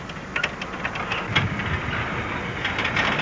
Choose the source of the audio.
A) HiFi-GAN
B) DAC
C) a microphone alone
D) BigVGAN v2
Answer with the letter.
C